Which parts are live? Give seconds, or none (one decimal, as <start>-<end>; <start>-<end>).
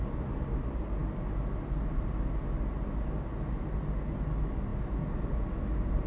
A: 0.0-6.1